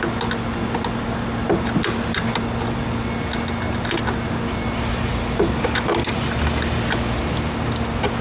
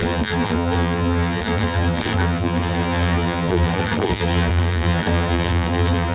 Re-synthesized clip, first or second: second